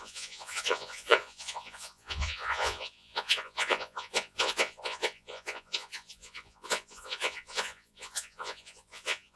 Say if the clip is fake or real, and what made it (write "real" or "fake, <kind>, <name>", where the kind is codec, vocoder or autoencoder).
fake, vocoder, Vocos